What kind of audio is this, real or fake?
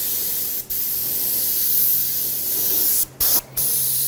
real